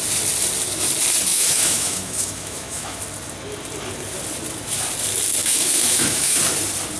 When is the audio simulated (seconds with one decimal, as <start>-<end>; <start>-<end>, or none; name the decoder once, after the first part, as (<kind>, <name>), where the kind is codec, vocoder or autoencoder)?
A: 1.3-3.0 (autoencoder, DAC-VAE); 5.4-6.4